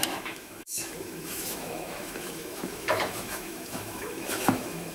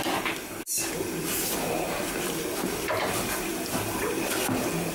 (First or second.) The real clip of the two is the second